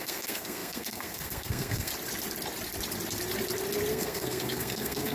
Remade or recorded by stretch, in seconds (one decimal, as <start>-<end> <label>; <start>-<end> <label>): 0.0-1.9 remade; 1.9-3.9 recorded; 3.9-5.1 remade